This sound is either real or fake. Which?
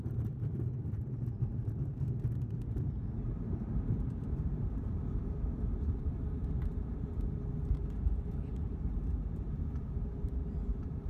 fake